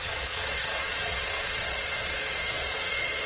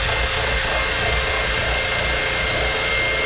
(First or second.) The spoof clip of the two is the first